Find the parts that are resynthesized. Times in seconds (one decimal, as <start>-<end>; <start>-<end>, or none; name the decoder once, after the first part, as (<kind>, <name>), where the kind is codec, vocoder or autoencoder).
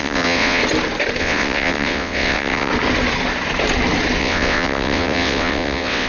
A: 0.0-0.6 (vocoder, WaveNeXt); 1.2-2.7; 4.2-6.1